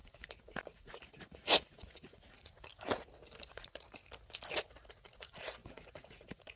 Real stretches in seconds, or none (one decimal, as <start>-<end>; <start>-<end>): 2.7-3.4; 4.0-4.9